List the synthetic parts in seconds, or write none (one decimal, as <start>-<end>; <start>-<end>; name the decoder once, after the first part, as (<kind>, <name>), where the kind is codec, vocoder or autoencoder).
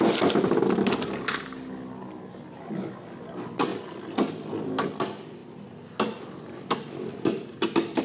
none